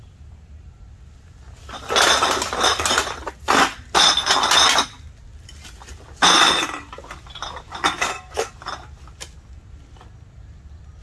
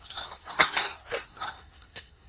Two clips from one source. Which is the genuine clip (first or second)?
first